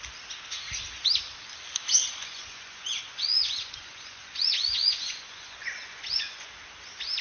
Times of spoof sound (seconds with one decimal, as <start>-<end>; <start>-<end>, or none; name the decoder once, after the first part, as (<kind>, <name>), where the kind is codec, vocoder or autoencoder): 2.2-6.5 (vocoder, Vocos)